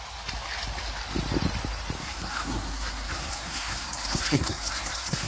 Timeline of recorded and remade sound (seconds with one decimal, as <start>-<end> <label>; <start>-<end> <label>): 0.0-2.0 recorded; 2.0-5.3 remade